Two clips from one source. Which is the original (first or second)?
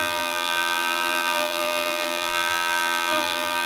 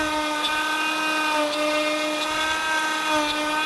second